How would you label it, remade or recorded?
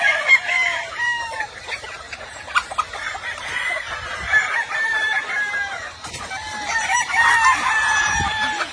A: remade